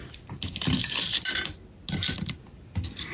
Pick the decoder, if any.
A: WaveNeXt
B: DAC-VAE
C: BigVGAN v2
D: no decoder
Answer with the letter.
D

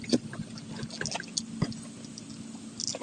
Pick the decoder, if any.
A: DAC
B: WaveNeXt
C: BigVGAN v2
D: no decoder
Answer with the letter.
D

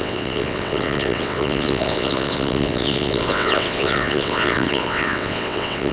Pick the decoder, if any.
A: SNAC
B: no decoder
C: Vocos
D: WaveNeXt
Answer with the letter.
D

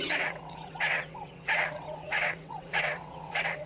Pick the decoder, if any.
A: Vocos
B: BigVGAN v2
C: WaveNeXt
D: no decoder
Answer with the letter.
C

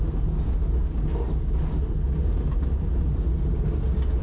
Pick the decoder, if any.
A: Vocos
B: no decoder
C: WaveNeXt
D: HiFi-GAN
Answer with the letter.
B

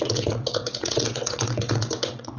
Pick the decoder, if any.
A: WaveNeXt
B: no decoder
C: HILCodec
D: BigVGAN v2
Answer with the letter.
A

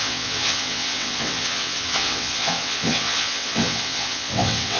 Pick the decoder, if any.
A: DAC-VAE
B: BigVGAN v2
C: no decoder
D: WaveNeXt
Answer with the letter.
D